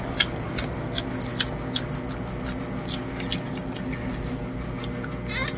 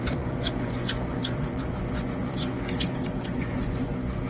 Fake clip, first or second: second